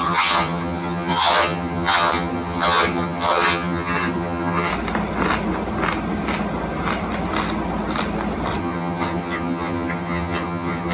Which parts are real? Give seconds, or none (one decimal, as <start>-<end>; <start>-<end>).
4.7-8.6